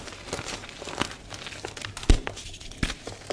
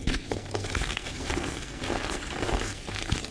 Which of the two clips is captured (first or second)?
first